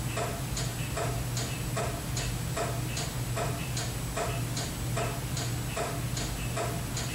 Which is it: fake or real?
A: real